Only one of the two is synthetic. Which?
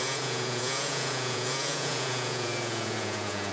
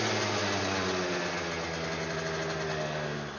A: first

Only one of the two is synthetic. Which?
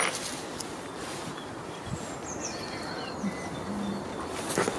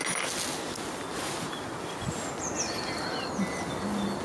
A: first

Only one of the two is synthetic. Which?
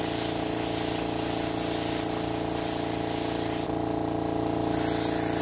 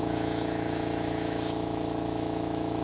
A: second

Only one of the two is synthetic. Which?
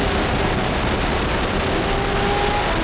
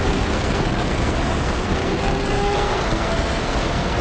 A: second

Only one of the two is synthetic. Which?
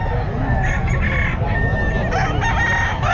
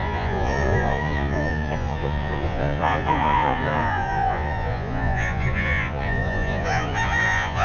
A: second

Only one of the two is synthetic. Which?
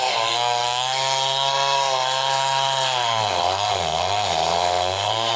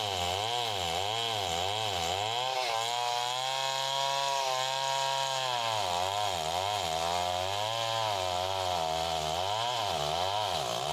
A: first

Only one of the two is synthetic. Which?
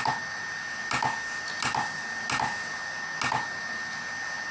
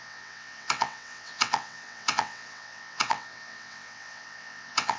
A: second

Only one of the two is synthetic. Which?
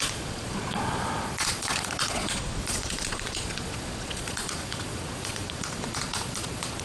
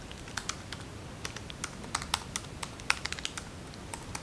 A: first